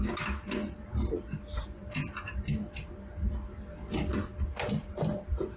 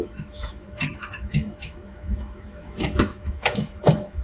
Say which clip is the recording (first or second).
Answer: first